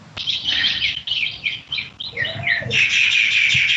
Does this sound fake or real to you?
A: real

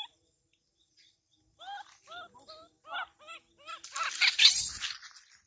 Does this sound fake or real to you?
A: real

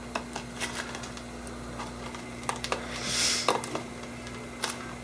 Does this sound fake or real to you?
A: real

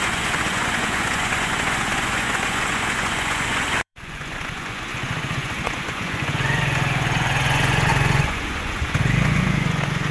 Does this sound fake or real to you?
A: fake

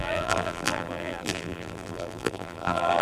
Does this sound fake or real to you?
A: fake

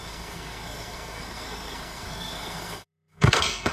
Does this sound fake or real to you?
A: fake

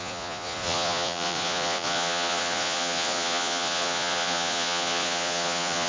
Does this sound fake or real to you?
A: fake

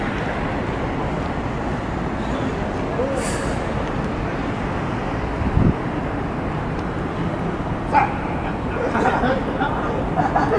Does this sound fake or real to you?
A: real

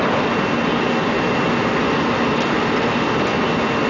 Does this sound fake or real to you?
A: real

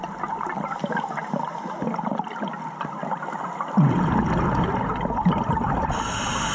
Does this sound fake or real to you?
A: real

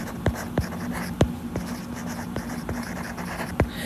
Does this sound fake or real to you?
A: real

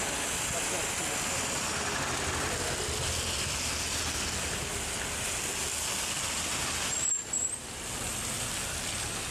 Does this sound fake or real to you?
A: real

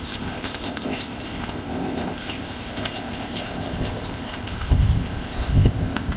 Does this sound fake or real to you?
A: fake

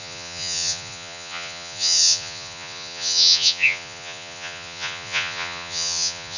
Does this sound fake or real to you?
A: fake